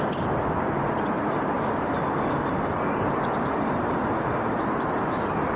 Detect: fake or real real